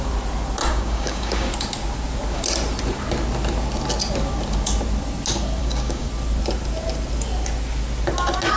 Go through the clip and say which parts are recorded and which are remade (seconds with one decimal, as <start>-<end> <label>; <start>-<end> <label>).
0.0-0.7 recorded; 0.7-1.5 remade; 1.5-5.6 recorded; 5.6-6.1 remade; 6.1-8.6 recorded

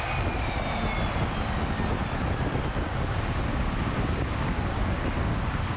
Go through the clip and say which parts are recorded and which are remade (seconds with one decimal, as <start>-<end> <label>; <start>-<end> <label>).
0.0-2.9 recorded; 2.9-5.8 remade

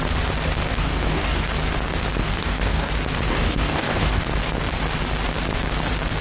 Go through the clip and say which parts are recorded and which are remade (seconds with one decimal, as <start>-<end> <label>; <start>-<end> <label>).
0.0-0.7 recorded; 0.7-1.4 remade; 1.4-2.2 recorded; 2.2-2.9 remade; 2.9-3.3 recorded; 3.3-4.2 remade; 4.2-6.2 recorded

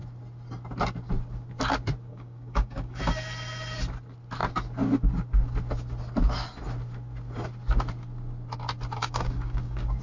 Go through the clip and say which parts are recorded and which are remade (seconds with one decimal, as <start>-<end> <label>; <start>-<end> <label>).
0.0-2.1 recorded; 2.1-3.0 remade; 3.0-9.0 recorded; 9.0-10.0 remade

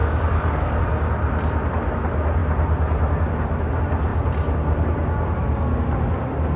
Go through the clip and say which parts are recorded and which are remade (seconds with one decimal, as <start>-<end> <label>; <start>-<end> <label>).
0.0-0.8 remade; 0.8-6.6 recorded